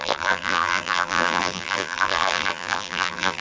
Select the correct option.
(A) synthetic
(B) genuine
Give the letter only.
A